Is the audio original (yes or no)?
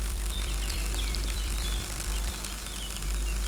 no